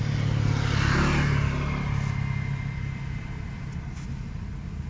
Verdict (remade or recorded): recorded